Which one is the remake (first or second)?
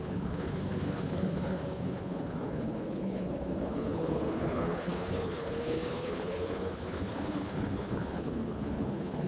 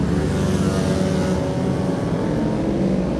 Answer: first